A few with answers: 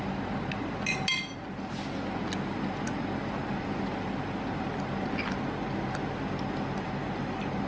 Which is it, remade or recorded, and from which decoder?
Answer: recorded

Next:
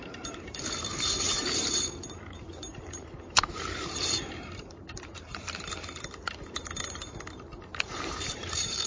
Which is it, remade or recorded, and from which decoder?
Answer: remade, vocoder, BigVGAN v2